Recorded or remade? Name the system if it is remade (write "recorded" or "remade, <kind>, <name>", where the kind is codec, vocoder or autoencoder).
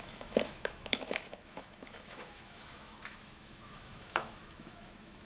remade, autoencoder, DAC-VAE